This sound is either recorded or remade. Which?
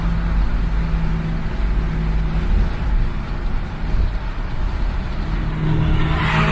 recorded